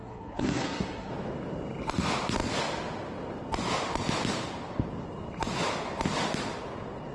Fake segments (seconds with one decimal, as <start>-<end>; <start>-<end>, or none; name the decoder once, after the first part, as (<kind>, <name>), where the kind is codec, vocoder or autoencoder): 0.0-1.1 (codec, SNAC)

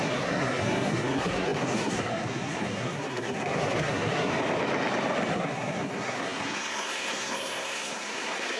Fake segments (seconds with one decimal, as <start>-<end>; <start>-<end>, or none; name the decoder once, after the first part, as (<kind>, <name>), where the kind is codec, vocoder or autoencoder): 0.0-4.3 (codec, SNAC); 5.3-8.6

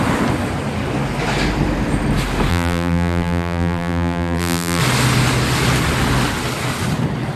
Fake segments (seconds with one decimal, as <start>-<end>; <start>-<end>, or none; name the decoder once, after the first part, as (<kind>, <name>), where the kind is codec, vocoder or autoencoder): 2.5-4.8 (vocoder, BigVGAN v2)

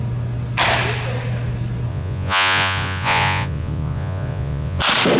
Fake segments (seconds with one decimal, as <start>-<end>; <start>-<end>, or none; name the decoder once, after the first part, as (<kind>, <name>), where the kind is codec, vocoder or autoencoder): 1.9-4.8 (vocoder, Vocos)

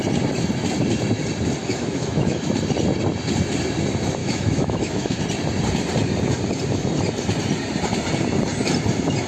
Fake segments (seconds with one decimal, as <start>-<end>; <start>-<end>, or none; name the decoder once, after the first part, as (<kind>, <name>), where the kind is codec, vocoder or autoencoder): 1.6-2.4 (autoencoder, DAC-VAE); 4.2-5.2